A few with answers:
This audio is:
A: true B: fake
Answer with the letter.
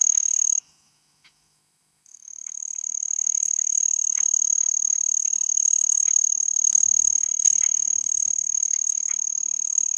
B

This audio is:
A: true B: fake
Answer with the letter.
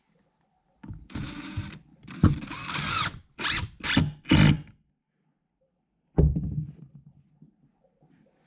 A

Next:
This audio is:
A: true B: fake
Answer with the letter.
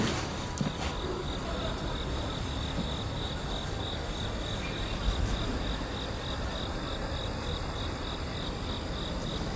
A